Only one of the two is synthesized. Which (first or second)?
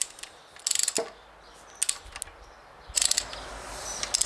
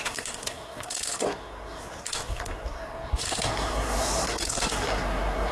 second